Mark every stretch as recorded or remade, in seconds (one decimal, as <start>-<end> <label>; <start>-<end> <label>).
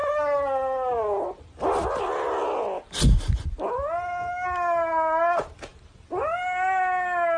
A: 0.0-7.4 recorded